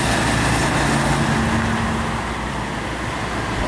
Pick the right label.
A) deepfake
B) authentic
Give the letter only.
B